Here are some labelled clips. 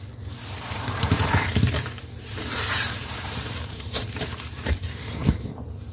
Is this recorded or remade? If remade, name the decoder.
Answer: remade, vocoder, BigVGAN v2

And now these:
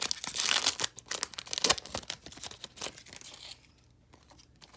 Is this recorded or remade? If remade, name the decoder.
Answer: recorded